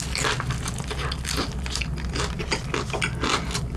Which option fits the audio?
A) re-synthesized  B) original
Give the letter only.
B